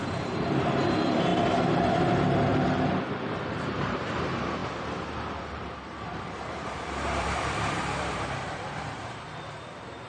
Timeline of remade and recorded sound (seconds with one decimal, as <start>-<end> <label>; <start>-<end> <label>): 0.0-1.3 remade; 1.3-1.9 recorded; 1.9-2.5 remade; 2.5-3.3 recorded; 3.3-4.6 remade; 4.6-5.6 recorded; 5.6-10.1 remade